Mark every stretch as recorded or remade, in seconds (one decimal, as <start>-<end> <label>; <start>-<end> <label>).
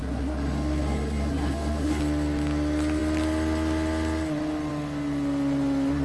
0.0-2.0 remade; 2.0-6.0 recorded